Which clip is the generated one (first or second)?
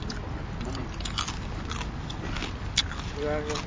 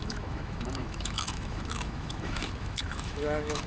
second